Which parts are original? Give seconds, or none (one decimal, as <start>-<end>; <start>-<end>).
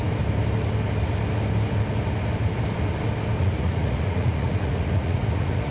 0.0-3.4